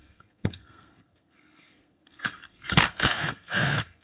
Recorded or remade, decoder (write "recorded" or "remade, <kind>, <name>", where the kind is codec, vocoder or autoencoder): remade, codec, SNAC